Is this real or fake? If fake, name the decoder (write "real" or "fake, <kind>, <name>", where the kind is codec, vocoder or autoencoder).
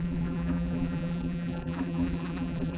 fake, vocoder, BigVGAN v2